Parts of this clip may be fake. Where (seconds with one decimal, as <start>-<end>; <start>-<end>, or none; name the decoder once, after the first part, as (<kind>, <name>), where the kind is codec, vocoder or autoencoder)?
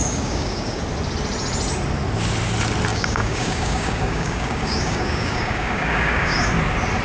0.0-0.8 (codec, DAC); 2.9-6.5